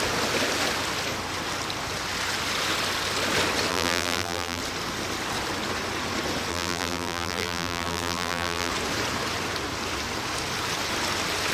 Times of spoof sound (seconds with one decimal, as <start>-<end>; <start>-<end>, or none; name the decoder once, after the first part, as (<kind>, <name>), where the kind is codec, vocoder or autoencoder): 3.7-4.6 (vocoder, BigVGAN v2); 6.5-8.7

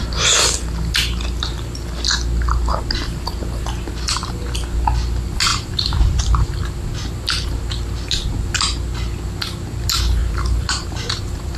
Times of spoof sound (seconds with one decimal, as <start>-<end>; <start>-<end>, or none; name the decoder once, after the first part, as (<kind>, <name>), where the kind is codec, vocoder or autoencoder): 5.5-6.5 (vocoder, BigVGAN v2); 10.2-11.6

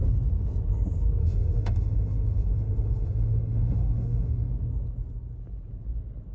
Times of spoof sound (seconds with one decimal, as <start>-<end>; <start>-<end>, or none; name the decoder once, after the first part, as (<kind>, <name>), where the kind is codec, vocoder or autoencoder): 1.2-4.5 (autoencoder, DAC-VAE)

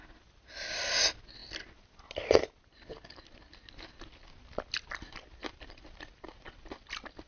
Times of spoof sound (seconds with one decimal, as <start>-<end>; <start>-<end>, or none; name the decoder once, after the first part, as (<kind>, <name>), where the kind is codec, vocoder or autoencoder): 5.4-6.1 (vocoder, BigVGAN v2)